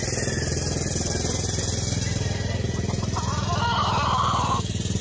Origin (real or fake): real